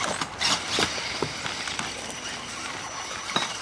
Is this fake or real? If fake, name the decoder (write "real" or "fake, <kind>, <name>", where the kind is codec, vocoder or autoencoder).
real